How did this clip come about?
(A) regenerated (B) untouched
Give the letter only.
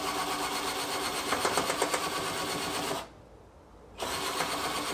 B